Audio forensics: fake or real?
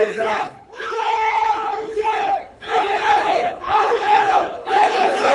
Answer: fake